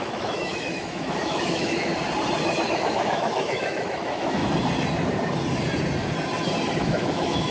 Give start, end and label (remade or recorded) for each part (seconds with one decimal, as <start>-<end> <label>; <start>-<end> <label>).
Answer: 0.0-1.9 remade; 1.9-2.7 recorded; 2.7-4.4 remade; 4.4-6.8 recorded; 6.8-7.5 remade